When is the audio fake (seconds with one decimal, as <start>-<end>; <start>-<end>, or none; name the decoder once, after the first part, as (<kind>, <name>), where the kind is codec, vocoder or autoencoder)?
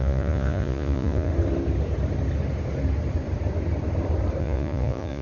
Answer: 0.0-1.3 (vocoder, Vocos); 4.4-5.2